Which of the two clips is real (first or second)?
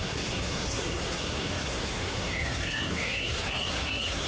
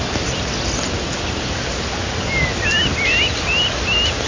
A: second